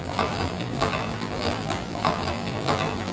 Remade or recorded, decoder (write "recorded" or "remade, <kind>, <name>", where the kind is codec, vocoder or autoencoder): remade, vocoder, BigVGAN v2